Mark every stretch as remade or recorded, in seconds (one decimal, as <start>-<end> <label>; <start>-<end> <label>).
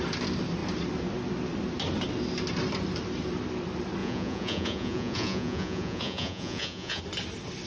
0.0-4.0 recorded; 4.0-7.0 remade; 7.0-7.7 recorded